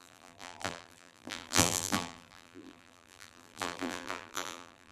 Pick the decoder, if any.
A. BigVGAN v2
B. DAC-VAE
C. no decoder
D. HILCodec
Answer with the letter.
A